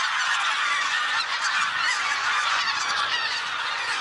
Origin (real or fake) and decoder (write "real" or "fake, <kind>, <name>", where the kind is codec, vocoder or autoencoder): fake, vocoder, Vocos